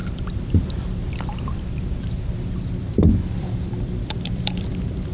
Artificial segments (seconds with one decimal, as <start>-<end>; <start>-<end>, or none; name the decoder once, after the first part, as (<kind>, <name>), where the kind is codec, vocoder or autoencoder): 2.8-5.1 (vocoder, BigVGAN v2)